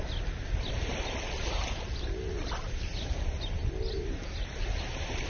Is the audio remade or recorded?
recorded